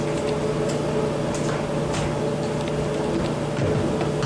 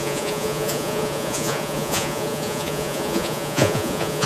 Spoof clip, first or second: second